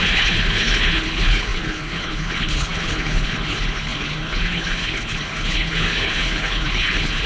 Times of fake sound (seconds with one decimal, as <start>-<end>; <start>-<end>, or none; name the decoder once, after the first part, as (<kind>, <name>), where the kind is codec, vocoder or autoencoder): 0.0-7.3 (codec, HILCodec)